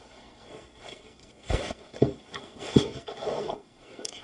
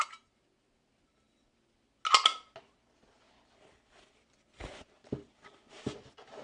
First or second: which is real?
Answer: second